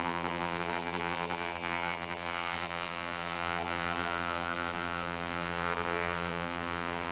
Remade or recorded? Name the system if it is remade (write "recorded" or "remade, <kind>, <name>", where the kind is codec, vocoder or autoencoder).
remade, vocoder, BigVGAN v2